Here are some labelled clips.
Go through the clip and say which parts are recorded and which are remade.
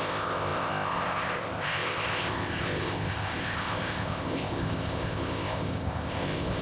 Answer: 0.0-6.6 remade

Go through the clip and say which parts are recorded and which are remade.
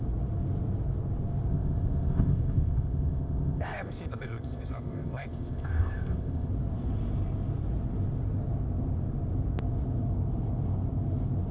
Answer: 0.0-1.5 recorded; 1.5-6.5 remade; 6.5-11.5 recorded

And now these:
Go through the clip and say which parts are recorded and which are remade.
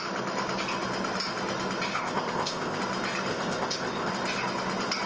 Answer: 0.0-1.9 recorded; 1.9-2.8 remade; 2.8-3.3 recorded; 3.3-4.1 remade; 4.1-5.1 recorded